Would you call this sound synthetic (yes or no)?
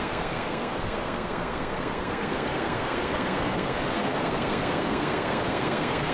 yes